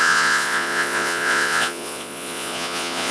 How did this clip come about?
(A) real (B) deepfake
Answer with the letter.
B